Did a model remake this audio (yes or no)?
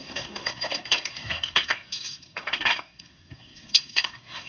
yes